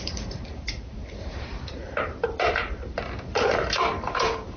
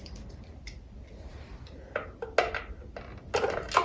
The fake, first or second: first